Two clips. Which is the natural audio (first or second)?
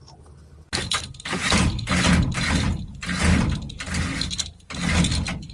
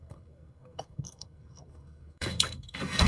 first